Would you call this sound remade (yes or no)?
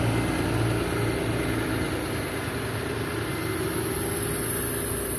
no